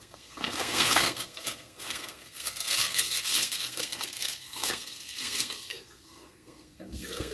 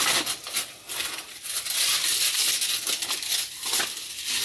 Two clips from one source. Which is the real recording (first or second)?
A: second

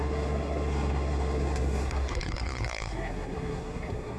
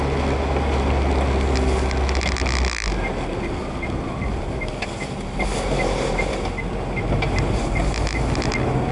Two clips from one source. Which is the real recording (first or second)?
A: second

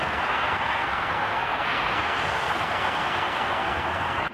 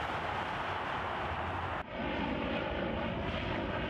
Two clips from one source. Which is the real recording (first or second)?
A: second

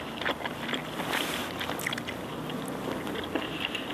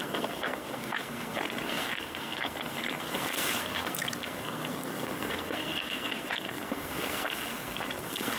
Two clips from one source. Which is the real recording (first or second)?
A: first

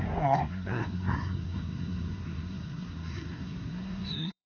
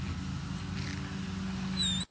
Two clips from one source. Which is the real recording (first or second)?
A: second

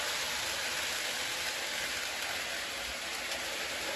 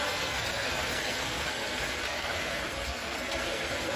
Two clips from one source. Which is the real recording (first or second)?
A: first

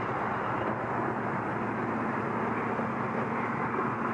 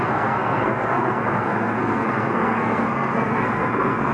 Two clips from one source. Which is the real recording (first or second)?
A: first